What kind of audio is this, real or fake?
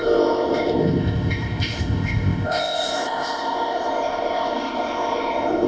fake